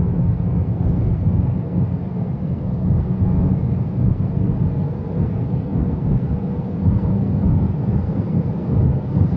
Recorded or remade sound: remade